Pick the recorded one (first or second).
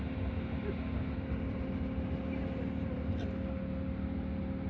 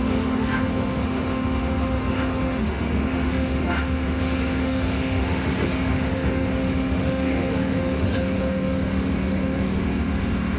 first